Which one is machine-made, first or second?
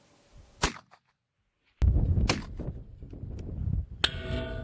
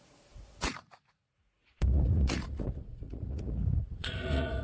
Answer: second